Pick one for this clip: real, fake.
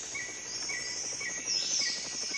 real